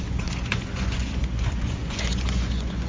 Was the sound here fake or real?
fake